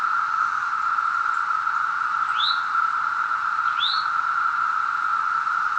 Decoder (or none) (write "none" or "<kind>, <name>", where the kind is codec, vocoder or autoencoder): none